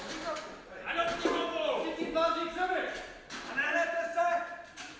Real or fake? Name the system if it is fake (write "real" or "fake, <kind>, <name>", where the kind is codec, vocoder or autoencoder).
real